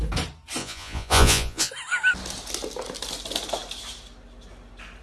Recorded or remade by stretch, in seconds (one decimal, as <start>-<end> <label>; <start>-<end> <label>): 0.0-0.6 recorded; 0.6-1.7 remade; 1.7-5.0 recorded